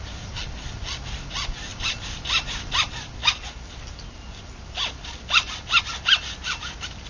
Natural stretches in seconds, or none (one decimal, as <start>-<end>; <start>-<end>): 0.0-1.7; 2.8-7.1